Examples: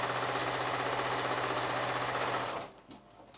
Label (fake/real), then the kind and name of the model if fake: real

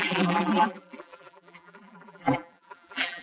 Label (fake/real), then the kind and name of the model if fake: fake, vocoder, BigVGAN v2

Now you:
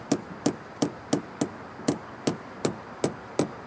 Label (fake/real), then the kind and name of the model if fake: real